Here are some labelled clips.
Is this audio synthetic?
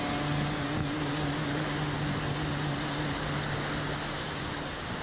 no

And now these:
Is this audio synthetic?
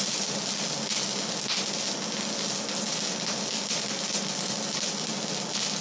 no